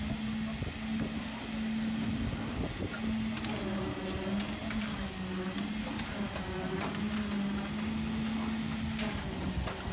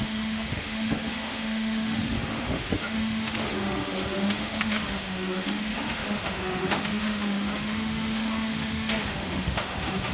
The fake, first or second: second